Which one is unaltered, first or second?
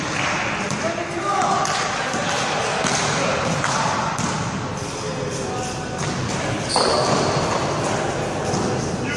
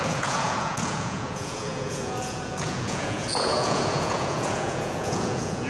first